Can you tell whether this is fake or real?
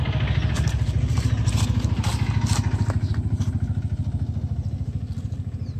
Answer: real